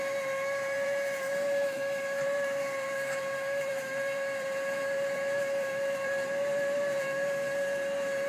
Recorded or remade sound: remade